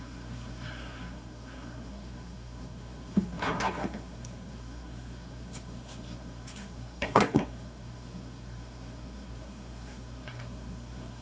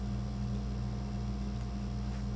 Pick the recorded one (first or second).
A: second